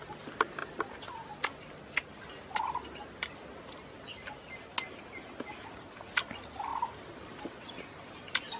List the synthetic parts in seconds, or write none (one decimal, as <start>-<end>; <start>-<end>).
none